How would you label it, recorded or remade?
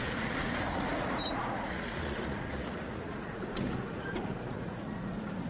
remade